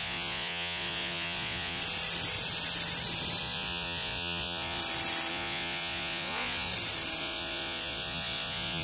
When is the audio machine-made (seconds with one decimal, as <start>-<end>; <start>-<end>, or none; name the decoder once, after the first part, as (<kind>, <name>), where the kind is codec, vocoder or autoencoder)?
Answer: 0.0-1.8 (vocoder, Vocos); 3.4-4.8; 5.3-6.7; 7.2-8.8